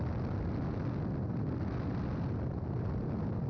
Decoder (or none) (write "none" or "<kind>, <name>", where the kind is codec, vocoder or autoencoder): none